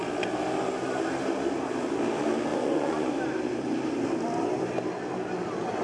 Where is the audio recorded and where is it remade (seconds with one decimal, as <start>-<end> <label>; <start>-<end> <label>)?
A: 0.0-2.5 recorded; 2.5-3.1 remade; 3.1-5.8 recorded